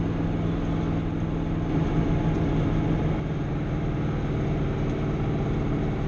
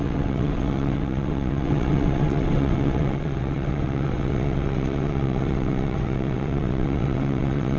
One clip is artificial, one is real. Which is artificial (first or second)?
second